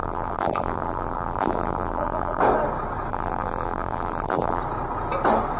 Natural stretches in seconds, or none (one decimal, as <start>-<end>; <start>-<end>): 2.4-3.1; 4.6-5.6